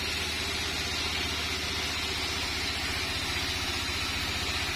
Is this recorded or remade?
recorded